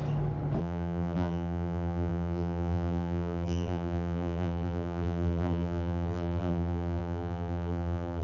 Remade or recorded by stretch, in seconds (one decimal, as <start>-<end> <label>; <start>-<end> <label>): 0.0-0.6 recorded; 0.6-8.2 remade

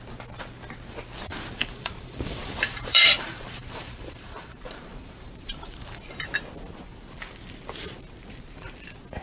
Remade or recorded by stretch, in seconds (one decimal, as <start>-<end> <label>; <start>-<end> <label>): 0.0-1.6 recorded; 1.6-6.0 remade; 6.0-9.2 recorded

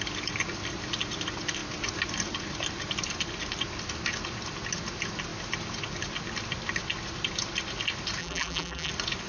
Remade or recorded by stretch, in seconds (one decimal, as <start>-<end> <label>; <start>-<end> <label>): 0.0-8.2 recorded; 8.2-8.9 remade; 8.9-9.3 recorded

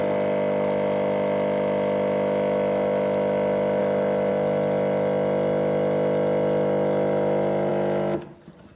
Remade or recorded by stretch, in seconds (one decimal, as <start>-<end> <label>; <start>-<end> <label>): 0.0-8.8 recorded

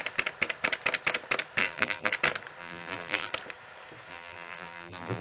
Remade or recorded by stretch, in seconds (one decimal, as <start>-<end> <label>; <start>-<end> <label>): 0.0-1.6 recorded; 1.6-2.1 remade; 2.1-2.6 recorded; 2.6-3.3 remade; 3.3-4.1 recorded; 4.1-5.2 remade

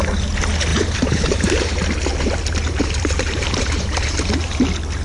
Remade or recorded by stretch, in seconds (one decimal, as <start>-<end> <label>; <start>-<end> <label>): 0.0-0.7 recorded; 0.7-1.7 remade; 1.7-2.1 recorded; 2.1-4.6 remade; 4.6-5.0 recorded

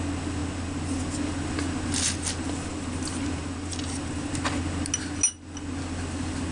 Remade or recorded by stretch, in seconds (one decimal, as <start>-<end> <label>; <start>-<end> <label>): 0.0-6.5 recorded